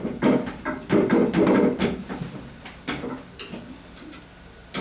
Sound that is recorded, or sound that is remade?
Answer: recorded